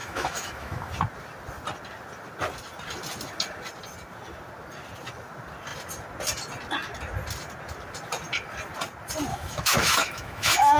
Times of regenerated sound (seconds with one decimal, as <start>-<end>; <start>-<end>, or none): 0.0-0.9; 9.3-10.8